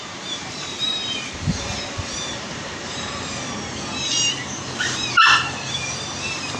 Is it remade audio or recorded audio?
remade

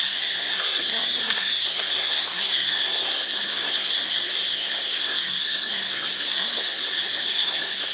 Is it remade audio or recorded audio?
remade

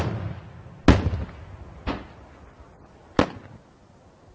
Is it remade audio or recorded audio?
recorded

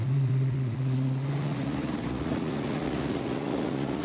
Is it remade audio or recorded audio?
remade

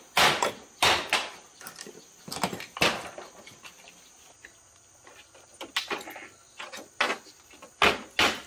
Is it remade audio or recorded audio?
recorded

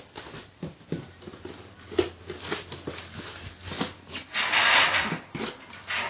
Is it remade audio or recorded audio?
recorded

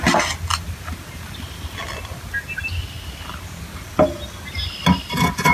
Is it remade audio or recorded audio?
recorded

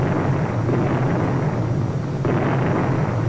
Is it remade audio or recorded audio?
recorded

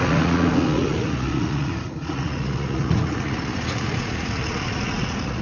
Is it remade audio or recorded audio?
remade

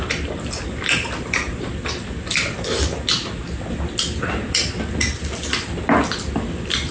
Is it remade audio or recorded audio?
recorded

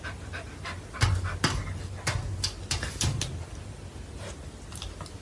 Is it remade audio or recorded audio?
recorded